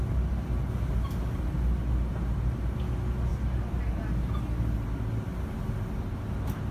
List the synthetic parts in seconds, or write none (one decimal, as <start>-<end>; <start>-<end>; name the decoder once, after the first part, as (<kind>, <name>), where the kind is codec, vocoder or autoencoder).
none